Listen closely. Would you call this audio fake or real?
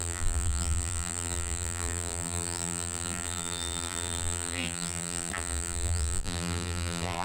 fake